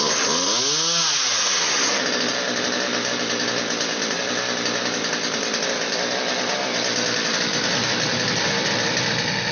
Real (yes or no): yes